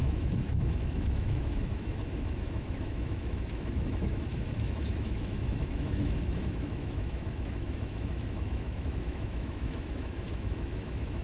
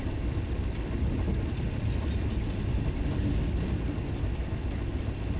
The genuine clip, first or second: second